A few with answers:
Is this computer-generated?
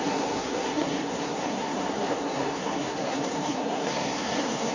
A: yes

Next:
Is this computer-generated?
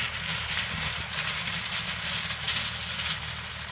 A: no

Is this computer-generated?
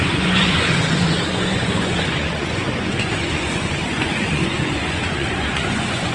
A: yes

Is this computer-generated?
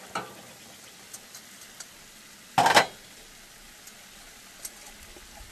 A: no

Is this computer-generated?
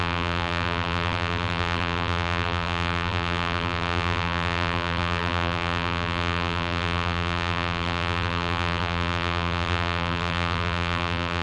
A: yes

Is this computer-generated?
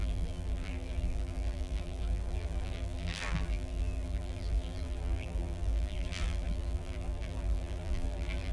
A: yes